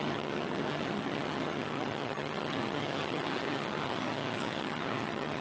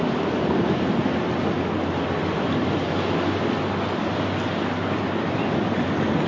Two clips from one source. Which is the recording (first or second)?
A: second